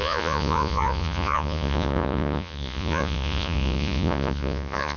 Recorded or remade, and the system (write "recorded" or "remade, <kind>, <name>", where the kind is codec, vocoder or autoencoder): remade, vocoder, Vocos